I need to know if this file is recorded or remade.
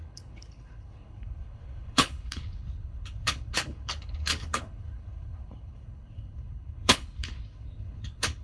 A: remade